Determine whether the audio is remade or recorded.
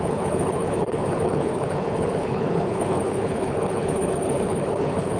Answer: remade